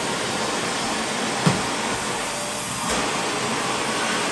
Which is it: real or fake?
real